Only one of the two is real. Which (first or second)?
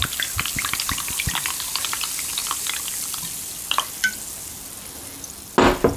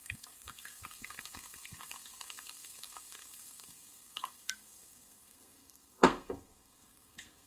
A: first